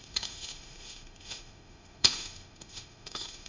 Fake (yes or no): yes